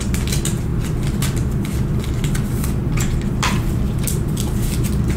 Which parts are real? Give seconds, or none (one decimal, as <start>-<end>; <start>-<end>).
0.0-5.2